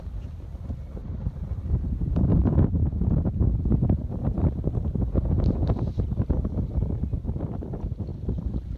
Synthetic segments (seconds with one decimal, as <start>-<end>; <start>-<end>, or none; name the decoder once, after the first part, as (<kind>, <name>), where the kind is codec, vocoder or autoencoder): 2.3-6.3 (vocoder, BigVGAN v2); 8.1-8.8